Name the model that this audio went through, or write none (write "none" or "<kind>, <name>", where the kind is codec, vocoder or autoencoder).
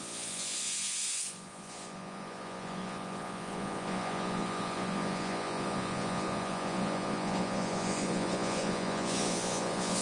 vocoder, Vocos